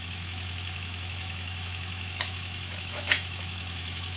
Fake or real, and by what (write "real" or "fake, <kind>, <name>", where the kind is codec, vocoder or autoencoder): fake, autoencoder, DAC-VAE